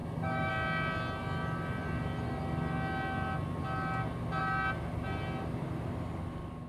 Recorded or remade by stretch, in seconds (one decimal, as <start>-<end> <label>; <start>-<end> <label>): 0.0-0.5 remade; 0.5-6.7 recorded